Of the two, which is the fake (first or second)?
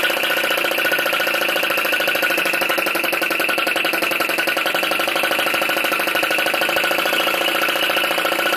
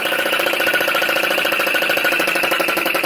second